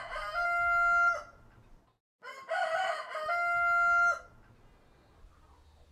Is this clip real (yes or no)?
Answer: yes